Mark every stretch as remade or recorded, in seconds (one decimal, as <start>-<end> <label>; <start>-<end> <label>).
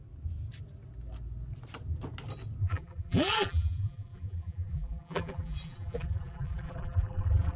0.0-2.6 recorded; 2.6-7.6 remade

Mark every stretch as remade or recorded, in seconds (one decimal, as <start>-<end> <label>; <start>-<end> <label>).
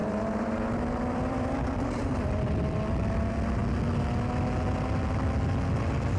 0.0-3.6 remade; 3.6-6.2 recorded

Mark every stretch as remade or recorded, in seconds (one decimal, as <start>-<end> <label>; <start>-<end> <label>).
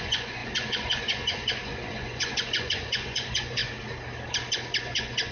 0.0-3.6 remade; 3.6-4.8 recorded; 4.8-5.3 remade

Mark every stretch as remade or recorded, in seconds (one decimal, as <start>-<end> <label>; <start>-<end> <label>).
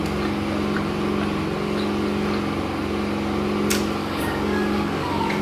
0.0-4.0 recorded; 4.0-5.4 remade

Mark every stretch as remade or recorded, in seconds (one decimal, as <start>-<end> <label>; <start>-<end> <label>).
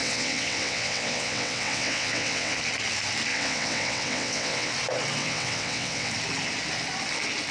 0.0-2.6 remade; 2.6-3.3 recorded; 3.3-4.7 remade; 4.7-5.2 recorded; 5.2-6.1 remade; 6.1-7.5 recorded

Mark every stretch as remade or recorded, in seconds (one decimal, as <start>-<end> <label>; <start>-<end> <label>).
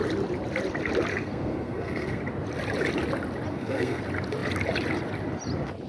0.0-1.1 recorded; 1.1-2.2 remade; 2.2-3.5 recorded; 3.5-4.0 remade; 4.0-5.9 recorded